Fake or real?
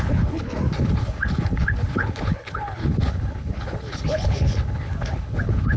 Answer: fake